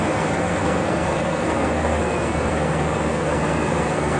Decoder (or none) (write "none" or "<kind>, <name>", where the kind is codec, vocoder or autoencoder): codec, SNAC